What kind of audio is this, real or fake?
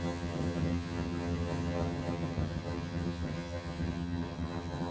fake